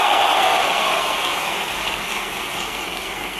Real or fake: fake